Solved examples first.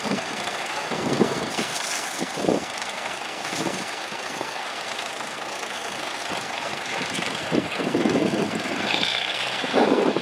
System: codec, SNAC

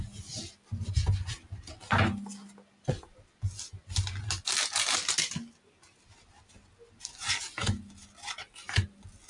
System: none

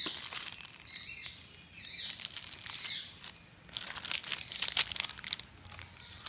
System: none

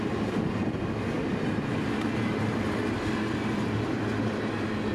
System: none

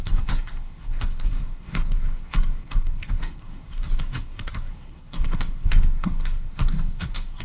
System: codec, SNAC